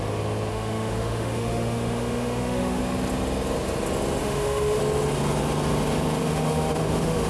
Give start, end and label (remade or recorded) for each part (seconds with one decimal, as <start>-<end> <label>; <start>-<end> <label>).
0.0-0.5 recorded; 0.5-2.8 remade; 2.8-4.2 recorded; 4.2-4.8 remade; 4.8-6.2 recorded; 6.2-7.3 remade